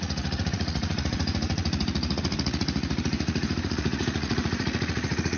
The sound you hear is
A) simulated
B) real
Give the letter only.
A